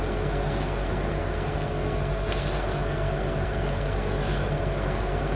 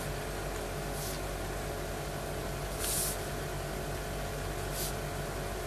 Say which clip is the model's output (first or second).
first